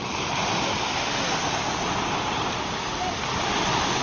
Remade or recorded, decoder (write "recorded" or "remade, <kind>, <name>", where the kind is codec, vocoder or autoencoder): recorded